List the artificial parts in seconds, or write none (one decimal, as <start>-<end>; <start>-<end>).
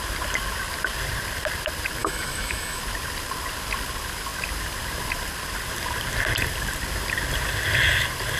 2.0-2.8